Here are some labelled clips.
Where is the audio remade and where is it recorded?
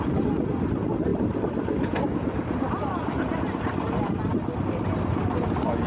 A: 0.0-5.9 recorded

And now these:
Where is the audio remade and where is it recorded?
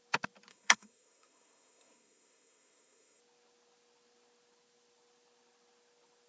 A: 0.0-0.5 recorded; 0.5-3.2 remade; 3.2-6.3 recorded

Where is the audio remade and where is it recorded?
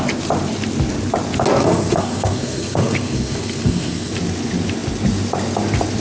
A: 0.0-1.6 recorded; 1.6-4.1 remade; 4.1-6.0 recorded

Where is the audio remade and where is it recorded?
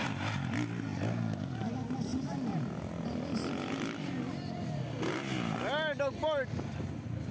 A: 0.0-7.3 recorded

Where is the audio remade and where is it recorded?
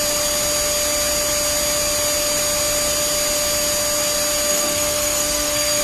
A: 0.0-4.5 recorded; 4.5-5.8 remade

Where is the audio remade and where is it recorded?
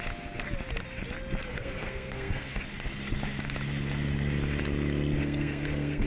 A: 0.0-1.4 recorded; 1.4-2.6 remade; 2.6-5.2 recorded; 5.2-6.1 remade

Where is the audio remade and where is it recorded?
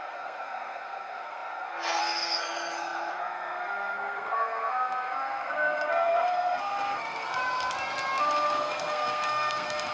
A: 0.0-7.4 remade; 7.4-8.2 recorded; 8.2-9.9 remade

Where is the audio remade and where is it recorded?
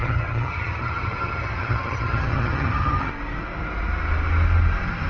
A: 0.0-3.1 remade; 3.1-5.1 recorded